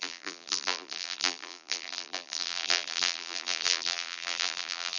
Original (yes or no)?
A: no